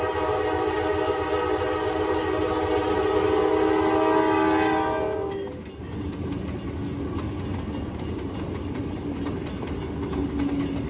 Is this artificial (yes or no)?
no